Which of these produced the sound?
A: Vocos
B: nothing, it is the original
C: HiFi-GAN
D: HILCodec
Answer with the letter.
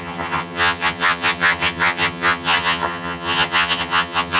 C